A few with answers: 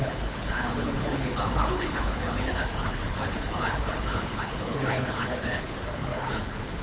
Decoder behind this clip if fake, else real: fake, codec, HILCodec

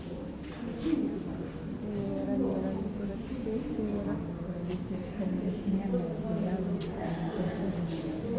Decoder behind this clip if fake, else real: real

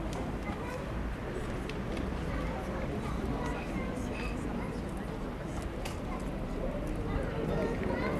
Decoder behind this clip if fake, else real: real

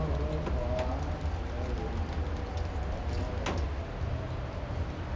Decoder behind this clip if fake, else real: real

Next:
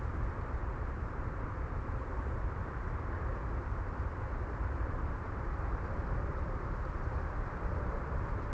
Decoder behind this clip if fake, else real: fake, vocoder, BigVGAN v2